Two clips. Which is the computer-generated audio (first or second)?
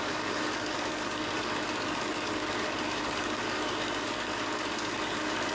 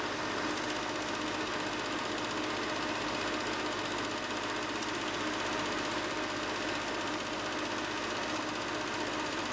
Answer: first